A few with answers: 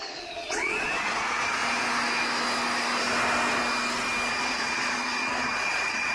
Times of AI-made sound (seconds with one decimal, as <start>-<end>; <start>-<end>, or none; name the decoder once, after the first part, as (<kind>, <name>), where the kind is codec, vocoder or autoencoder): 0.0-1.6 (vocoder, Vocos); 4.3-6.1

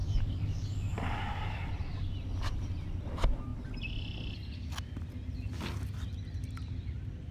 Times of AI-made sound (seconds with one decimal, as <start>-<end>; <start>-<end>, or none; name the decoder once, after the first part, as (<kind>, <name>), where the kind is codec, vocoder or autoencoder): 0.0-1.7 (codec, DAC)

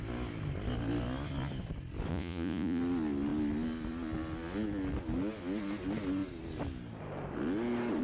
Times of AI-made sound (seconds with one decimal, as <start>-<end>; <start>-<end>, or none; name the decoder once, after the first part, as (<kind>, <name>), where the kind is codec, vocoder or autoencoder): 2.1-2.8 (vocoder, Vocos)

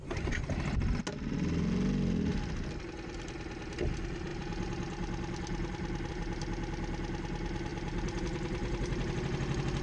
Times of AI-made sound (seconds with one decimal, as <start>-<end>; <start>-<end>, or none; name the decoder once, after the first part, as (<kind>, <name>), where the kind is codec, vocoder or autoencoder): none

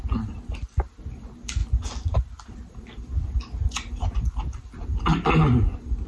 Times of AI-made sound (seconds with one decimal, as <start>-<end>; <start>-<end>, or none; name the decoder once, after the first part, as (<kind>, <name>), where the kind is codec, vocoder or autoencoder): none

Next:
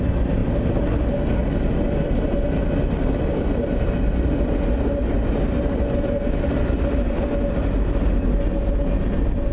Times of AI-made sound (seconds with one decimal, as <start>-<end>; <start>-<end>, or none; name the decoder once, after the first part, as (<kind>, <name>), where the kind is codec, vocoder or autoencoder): none

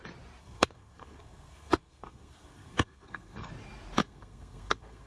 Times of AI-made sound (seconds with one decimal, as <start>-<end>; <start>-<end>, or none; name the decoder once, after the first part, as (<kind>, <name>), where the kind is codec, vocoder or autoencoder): 0.4-3.5 (codec, SNAC); 4.0-5.1

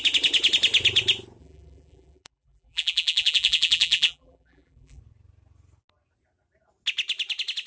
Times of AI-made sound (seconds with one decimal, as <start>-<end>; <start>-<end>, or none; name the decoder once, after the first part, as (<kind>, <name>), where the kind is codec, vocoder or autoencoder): 1.4-5.0 (vocoder, BigVGAN v2)